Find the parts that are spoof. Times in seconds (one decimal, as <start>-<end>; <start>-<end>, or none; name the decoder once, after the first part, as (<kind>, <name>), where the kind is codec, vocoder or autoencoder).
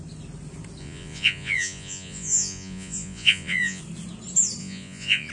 0.8-3.8 (vocoder, Vocos); 4.6-5.3